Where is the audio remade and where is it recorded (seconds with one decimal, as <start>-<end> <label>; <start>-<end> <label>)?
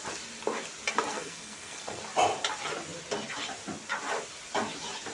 0.0-1.1 recorded; 1.1-2.0 remade; 2.0-5.1 recorded